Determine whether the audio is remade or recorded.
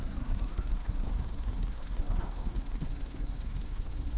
remade